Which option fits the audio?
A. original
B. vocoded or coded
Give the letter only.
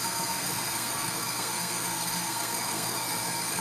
B